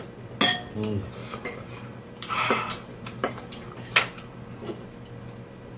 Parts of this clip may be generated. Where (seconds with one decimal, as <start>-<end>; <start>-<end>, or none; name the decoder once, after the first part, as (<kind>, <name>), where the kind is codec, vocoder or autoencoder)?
1.2-4.0 (vocoder, BigVGAN v2)